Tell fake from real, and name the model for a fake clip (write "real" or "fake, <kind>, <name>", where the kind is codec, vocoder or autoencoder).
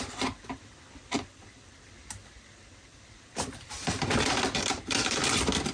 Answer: fake, vocoder, BigVGAN v2